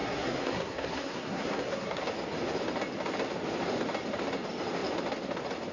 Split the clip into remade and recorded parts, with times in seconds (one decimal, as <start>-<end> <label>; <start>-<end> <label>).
0.0-2.0 remade; 2.0-5.7 recorded